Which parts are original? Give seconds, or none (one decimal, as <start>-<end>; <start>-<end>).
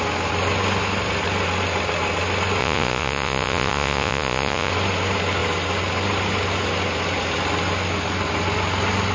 0.0-2.6; 4.7-9.1